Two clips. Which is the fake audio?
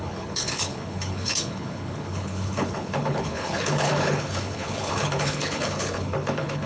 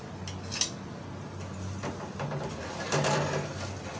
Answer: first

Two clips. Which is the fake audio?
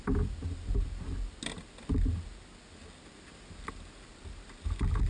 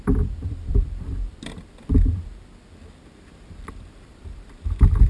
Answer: second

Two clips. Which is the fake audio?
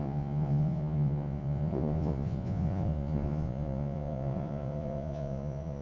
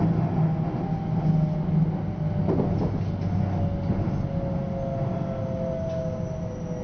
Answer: first